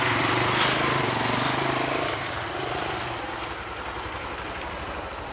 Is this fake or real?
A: fake